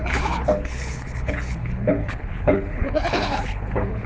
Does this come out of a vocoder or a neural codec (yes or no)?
yes